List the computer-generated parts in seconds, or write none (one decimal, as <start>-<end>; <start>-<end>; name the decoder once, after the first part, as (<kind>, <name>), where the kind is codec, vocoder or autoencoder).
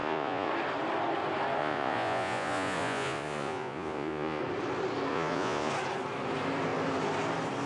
0.0-0.5 (vocoder, Vocos); 1.6-4.4; 5.1-5.7